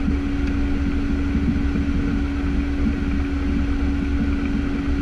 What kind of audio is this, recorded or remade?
recorded